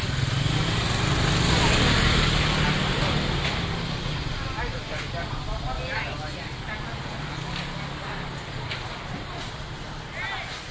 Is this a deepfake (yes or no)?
no